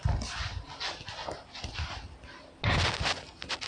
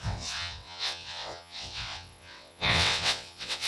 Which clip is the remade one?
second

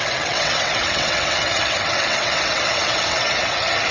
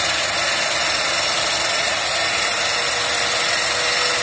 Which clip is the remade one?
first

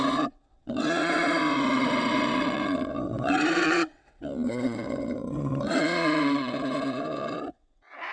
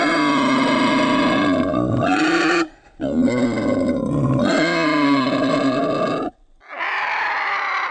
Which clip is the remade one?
first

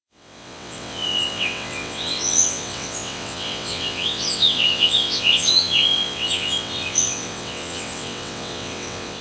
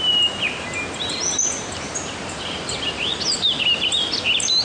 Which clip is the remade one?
first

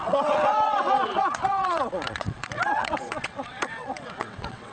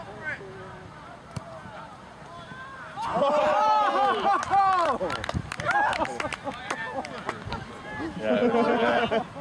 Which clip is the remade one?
first